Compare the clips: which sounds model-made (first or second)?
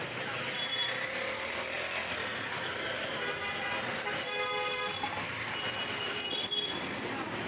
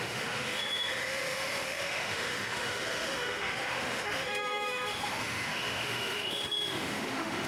second